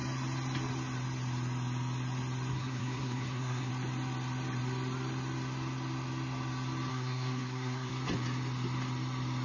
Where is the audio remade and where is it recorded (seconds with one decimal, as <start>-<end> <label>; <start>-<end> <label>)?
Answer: 0.0-2.5 recorded; 2.5-3.7 remade; 3.7-6.9 recorded; 6.9-7.9 remade; 7.9-9.4 recorded